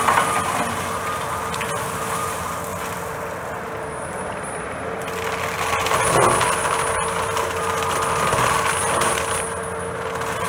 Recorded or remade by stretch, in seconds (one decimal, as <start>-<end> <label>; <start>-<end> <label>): 0.0-10.5 recorded